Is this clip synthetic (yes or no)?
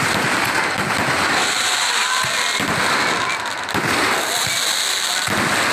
no